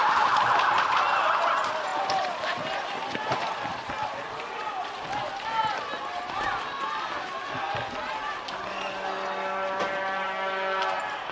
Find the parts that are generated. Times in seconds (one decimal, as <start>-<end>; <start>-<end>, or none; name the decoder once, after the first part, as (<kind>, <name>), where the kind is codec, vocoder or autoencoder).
none